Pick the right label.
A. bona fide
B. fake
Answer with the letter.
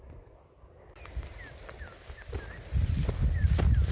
A